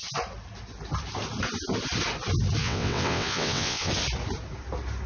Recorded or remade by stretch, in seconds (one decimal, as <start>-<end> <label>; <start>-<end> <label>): 0.0-2.6 recorded; 2.6-3.9 remade; 3.9-5.1 recorded